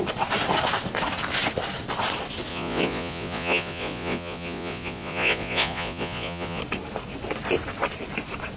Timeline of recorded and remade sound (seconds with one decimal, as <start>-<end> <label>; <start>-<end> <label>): 0.0-2.5 recorded; 2.5-6.6 remade; 6.6-8.6 recorded